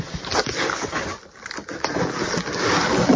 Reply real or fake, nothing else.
real